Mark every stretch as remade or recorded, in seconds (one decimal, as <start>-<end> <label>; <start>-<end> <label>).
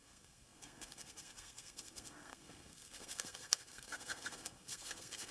0.0-5.3 remade